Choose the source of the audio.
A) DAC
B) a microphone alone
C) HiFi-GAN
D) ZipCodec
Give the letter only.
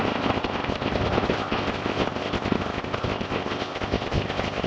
D